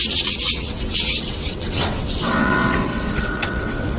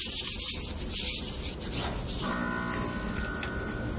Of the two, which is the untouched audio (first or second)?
second